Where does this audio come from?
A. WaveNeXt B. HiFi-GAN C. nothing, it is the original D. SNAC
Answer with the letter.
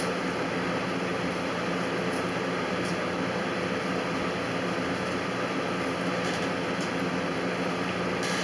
C